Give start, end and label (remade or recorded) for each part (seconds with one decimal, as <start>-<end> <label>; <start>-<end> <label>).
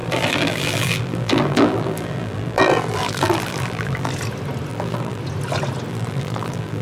0.0-4.1 remade; 4.1-4.7 recorded; 4.7-5.2 remade; 5.2-5.9 recorded; 5.9-6.8 remade